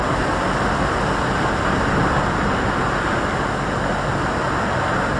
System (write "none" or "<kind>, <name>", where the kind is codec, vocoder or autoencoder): none